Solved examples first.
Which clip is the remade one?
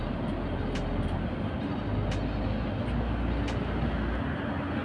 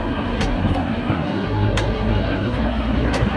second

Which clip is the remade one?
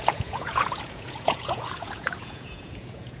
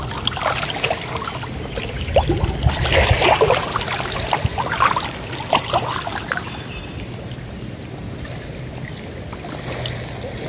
first